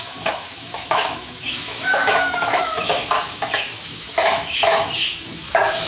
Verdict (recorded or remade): remade